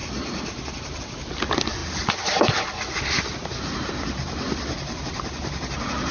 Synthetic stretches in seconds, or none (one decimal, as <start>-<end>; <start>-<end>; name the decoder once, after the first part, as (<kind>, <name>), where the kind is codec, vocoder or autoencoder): 1.8-5.0 (vocoder, BigVGAN v2)